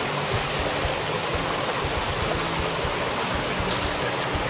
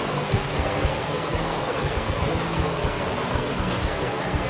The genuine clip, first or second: first